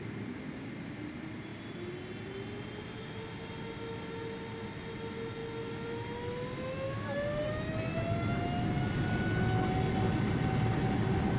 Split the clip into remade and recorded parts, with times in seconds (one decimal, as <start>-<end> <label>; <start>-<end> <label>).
0.0-11.4 recorded